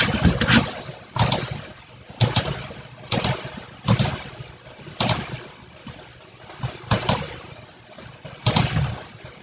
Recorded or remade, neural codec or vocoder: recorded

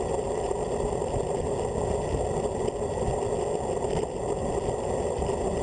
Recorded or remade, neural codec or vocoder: recorded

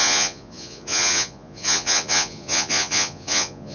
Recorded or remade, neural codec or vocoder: remade, vocoder, Vocos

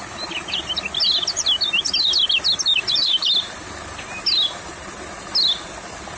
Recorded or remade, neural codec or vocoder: recorded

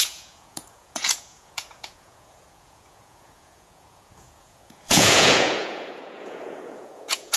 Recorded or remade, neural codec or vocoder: remade, vocoder, Vocos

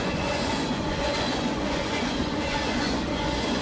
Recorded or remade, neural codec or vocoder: remade, vocoder, Vocos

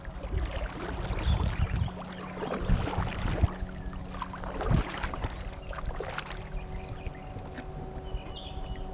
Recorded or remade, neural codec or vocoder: recorded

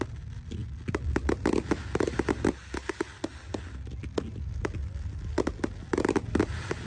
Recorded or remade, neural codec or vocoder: recorded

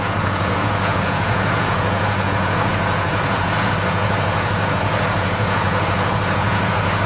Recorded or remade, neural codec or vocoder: remade, vocoder, Vocos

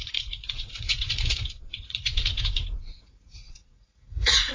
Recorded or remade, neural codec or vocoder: remade, vocoder, Vocos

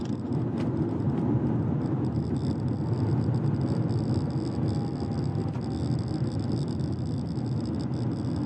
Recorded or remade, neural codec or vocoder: recorded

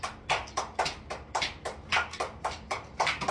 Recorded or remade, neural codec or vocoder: recorded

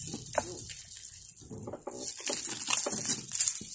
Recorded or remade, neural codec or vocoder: recorded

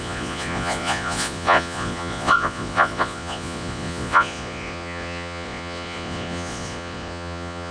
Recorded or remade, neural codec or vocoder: remade, vocoder, Vocos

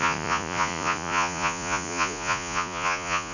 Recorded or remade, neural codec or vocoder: remade, vocoder, Vocos